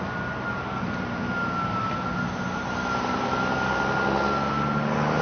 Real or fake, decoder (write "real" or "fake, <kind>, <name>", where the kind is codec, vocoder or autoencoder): real